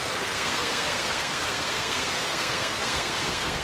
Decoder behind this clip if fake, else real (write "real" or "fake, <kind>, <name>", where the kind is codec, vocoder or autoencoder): fake, codec, SNAC